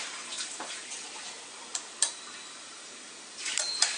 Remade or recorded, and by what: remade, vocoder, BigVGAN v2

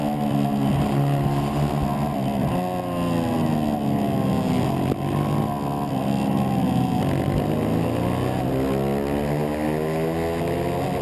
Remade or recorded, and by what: recorded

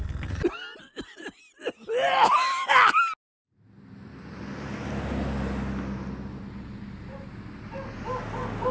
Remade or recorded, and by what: recorded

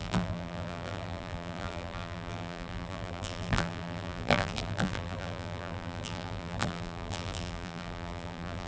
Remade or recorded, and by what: remade, vocoder, BigVGAN v2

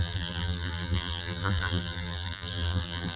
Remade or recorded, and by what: remade, vocoder, BigVGAN v2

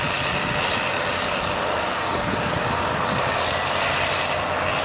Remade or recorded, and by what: recorded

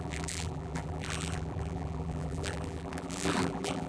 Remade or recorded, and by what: remade, vocoder, BigVGAN v2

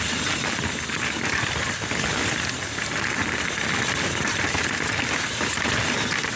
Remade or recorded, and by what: recorded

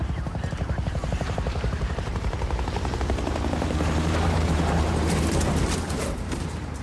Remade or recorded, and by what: remade, vocoder, BigVGAN v2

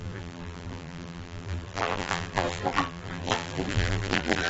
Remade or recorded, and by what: remade, vocoder, BigVGAN v2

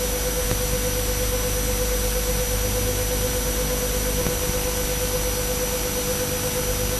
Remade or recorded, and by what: recorded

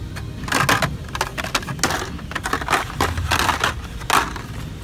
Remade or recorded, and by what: recorded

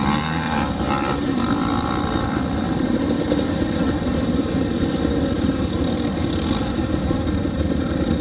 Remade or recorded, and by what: remade, vocoder, BigVGAN v2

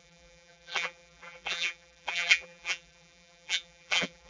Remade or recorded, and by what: remade, vocoder, BigVGAN v2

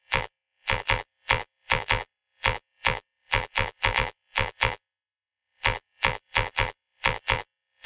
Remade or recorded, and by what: remade, vocoder, BigVGAN v2